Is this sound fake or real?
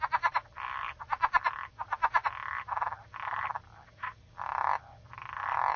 fake